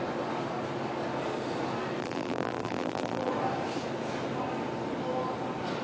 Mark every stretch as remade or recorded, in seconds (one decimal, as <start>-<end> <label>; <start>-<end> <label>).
0.0-2.0 recorded; 2.0-3.3 remade; 3.3-5.8 recorded